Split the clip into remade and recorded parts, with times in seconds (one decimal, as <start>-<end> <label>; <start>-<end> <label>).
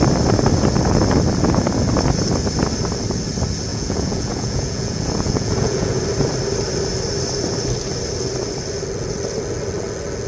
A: 0.0-3.7 recorded; 3.7-6.0 remade; 6.0-10.3 recorded